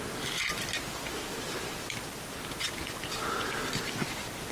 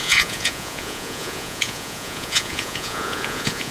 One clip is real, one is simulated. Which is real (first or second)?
first